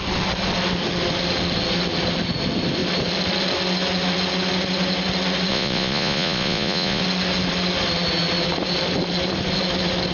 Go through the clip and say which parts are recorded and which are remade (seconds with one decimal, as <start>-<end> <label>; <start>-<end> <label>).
0.0-5.5 recorded; 5.5-7.0 remade; 7.0-10.1 recorded

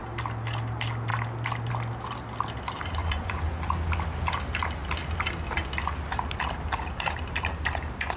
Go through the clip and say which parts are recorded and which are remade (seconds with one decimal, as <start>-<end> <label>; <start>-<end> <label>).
0.0-3.0 recorded; 3.0-3.5 remade; 3.5-8.2 recorded

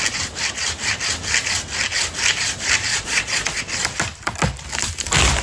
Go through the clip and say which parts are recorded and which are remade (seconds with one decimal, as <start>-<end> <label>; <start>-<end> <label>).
0.0-2.9 recorded; 2.9-3.6 remade; 3.6-5.4 recorded

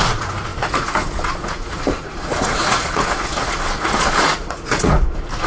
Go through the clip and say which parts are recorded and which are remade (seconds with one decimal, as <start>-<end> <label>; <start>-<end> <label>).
0.0-5.5 remade

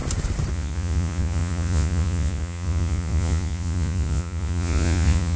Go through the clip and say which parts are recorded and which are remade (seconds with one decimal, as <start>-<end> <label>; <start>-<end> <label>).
0.0-0.5 recorded; 0.5-5.4 remade

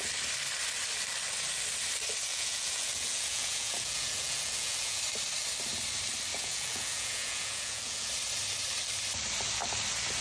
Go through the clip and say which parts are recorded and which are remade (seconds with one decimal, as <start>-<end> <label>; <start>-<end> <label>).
0.0-2.3 recorded; 2.3-5.0 remade; 5.0-6.3 recorded; 6.3-8.1 remade; 8.1-10.2 recorded